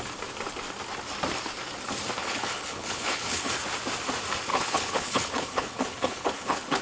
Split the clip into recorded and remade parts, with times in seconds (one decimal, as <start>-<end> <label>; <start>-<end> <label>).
0.0-2.2 recorded; 2.2-3.5 remade; 3.5-4.5 recorded; 4.5-6.8 remade